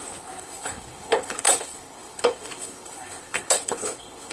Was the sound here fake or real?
fake